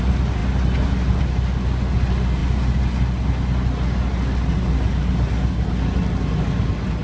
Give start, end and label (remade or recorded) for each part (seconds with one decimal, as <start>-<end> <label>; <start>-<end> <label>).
0.0-7.0 recorded